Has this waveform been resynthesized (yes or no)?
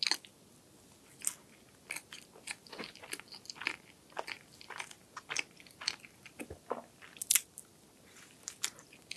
no